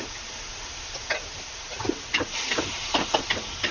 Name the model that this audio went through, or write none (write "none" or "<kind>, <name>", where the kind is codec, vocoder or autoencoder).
none